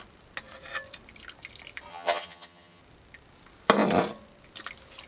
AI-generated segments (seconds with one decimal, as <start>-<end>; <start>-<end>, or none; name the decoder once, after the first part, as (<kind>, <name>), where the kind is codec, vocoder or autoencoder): 1.9-2.8 (vocoder, HiFi-GAN)